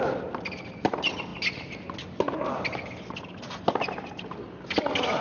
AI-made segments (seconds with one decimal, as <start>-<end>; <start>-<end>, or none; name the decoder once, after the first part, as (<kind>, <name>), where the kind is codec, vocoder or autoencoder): none